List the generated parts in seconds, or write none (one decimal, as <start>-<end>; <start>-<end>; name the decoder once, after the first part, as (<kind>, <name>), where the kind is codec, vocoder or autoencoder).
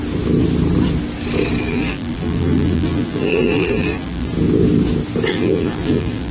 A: 1.6-4.3 (vocoder, BigVGAN v2); 5.3-6.3